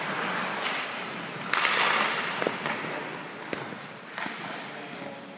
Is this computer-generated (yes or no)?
no